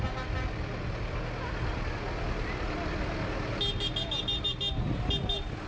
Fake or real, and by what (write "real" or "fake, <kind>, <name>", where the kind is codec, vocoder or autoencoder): real